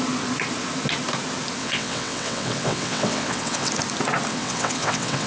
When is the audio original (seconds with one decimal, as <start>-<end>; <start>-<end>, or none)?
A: 0.0-1.6; 3.7-4.3